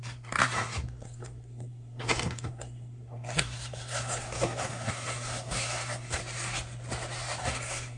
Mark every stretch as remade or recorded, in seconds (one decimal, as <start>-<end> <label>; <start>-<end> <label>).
0.0-6.2 remade; 6.2-7.4 recorded; 7.4-8.0 remade